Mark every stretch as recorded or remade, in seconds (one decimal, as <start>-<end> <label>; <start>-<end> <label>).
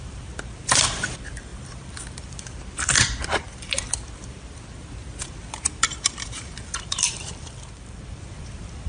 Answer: 0.0-8.9 remade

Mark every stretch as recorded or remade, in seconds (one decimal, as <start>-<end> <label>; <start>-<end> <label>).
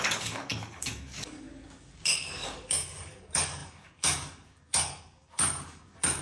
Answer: 0.0-6.2 remade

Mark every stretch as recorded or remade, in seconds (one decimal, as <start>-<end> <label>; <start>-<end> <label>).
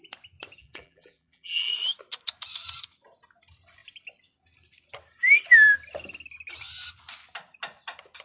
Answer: 0.0-0.6 recorded; 0.6-1.7 remade; 1.7-8.2 recorded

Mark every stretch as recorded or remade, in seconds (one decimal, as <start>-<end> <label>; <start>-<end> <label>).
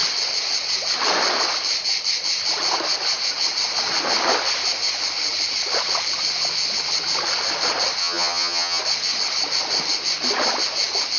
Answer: 0.0-8.0 recorded; 8.0-8.8 remade; 8.8-11.2 recorded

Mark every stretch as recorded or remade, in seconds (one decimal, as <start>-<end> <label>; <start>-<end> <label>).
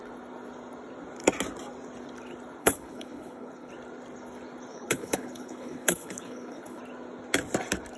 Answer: 0.0-2.6 recorded; 2.6-3.7 remade; 3.7-4.7 recorded; 4.7-6.8 remade; 6.8-8.0 recorded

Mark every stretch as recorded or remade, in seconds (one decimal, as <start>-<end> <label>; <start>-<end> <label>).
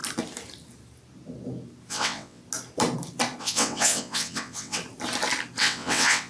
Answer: 0.0-1.9 recorded; 1.9-2.4 remade; 2.4-3.4 recorded; 3.4-4.8 remade; 4.8-5.6 recorded; 5.6-6.3 remade